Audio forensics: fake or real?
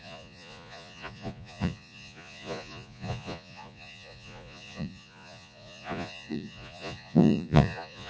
fake